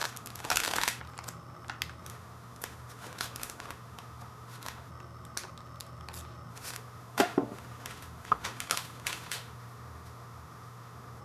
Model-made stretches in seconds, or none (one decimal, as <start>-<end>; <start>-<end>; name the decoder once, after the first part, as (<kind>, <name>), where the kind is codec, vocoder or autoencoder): 0.0-1.0 (autoencoder, DAC-VAE); 2.1-4.9; 6.5-11.2